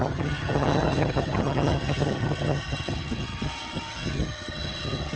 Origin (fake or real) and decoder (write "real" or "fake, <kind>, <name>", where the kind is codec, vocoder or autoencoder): fake, vocoder, HiFi-GAN